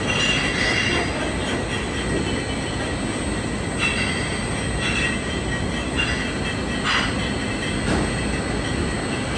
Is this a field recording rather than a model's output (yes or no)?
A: yes